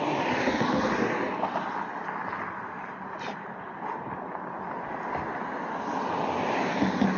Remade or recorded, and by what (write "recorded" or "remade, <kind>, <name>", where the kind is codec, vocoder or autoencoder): recorded